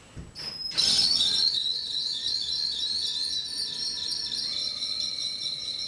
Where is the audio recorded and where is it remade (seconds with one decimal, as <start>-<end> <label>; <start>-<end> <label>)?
0.0-1.0 recorded; 1.0-2.8 remade; 2.8-4.6 recorded; 4.6-5.9 remade